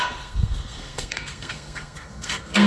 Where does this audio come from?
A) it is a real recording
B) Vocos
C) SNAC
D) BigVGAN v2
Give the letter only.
C